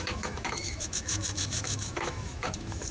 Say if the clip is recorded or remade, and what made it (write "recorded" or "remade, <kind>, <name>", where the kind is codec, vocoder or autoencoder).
remade, autoencoder, DAC-VAE